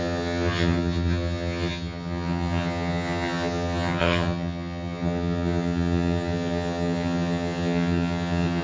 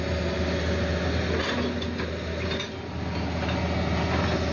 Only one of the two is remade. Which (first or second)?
first